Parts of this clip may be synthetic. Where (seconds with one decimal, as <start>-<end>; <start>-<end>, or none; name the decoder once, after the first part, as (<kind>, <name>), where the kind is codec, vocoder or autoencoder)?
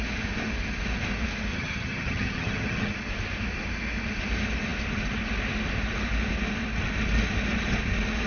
1.5-2.9 (vocoder, HiFi-GAN)